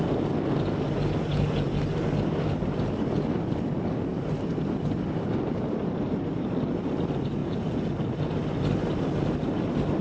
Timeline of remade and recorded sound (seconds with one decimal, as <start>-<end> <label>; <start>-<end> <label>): 0.0-1.3 recorded; 1.3-1.8 remade; 1.8-7.4 recorded; 7.4-7.9 remade; 7.9-10.0 recorded